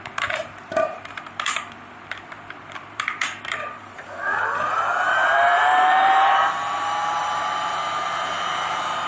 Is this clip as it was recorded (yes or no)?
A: no